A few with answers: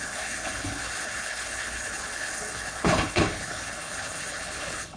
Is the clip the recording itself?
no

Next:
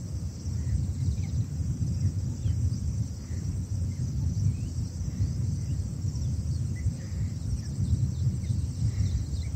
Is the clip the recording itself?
no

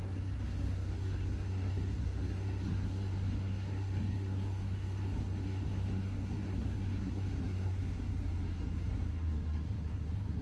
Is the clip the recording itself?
no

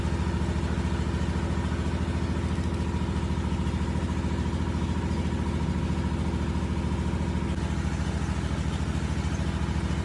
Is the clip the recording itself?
yes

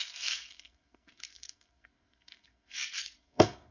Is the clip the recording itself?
no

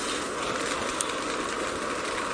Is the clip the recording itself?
yes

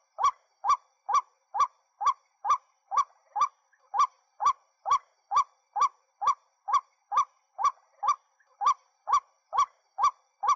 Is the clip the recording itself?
yes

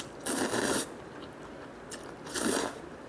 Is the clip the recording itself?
yes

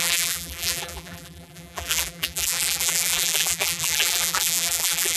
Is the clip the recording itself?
no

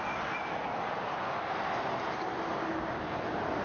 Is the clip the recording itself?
yes